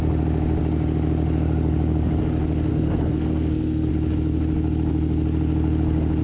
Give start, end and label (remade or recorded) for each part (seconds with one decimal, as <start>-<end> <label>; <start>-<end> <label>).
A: 0.0-2.7 recorded; 2.7-3.9 remade; 3.9-6.2 recorded